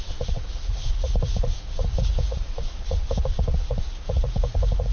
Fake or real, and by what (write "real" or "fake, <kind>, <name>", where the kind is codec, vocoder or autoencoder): fake, vocoder, Vocos